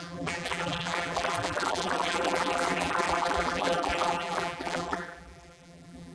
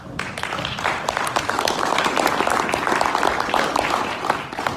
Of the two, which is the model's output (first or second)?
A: first